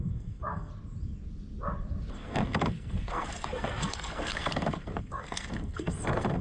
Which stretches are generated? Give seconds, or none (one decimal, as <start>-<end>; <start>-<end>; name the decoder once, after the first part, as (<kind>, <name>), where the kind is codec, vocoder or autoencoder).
0.0-0.7 (codec, SNAC); 2.1-6.4

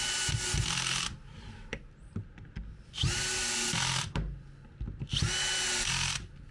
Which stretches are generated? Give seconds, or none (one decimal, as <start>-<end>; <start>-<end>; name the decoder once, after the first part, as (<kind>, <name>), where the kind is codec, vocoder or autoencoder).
2.7-3.5 (vocoder, BigVGAN v2)